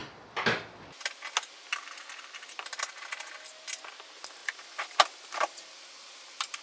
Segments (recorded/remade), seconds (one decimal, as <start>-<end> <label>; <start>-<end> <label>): 0.0-6.6 recorded